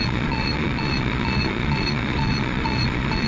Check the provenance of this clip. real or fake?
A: fake